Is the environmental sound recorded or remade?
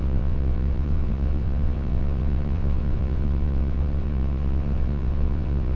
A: remade